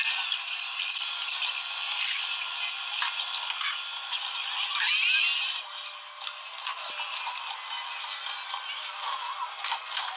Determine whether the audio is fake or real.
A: real